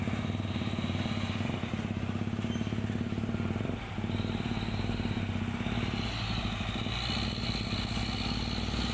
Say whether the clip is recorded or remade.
recorded